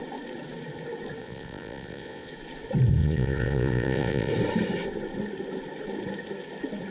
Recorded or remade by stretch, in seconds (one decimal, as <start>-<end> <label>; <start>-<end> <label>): 0.0-1.2 recorded; 1.2-2.3 remade; 2.3-3.0 recorded; 3.0-4.3 remade; 4.3-6.9 recorded